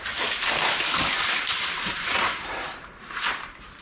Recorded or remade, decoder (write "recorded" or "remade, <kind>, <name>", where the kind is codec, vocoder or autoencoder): remade, vocoder, BigVGAN v2